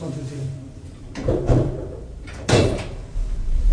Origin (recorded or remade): remade